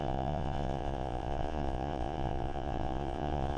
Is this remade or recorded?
remade